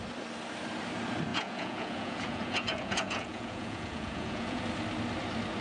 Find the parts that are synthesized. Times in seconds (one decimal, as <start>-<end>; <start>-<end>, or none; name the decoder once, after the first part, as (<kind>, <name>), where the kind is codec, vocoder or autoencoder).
1.3-4.6 (vocoder, Vocos)